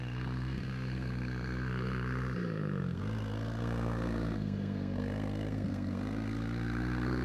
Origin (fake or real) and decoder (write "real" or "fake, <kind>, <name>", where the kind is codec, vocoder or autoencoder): fake, codec, SNAC